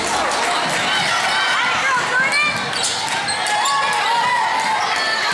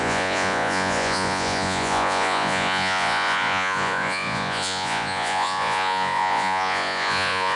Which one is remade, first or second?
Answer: second